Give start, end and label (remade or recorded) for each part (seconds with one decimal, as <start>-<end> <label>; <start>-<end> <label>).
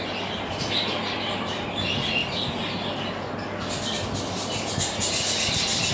0.0-5.9 recorded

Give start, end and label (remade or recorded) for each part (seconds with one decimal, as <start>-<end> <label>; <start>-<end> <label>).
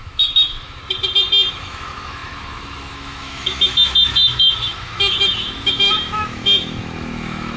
0.0-0.8 remade; 0.8-1.5 recorded; 1.5-7.6 remade